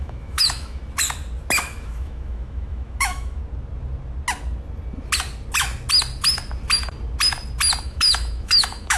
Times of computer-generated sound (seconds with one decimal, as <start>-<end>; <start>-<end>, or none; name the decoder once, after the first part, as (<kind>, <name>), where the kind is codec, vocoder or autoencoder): 0.0-0.8 (autoencoder, DAC-VAE); 1.6-3.4; 7.8-9.0